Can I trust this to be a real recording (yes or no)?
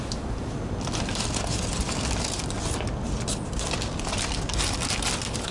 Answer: yes